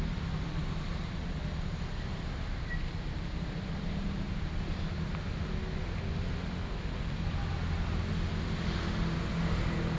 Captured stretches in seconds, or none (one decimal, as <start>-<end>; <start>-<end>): 0.0-10.0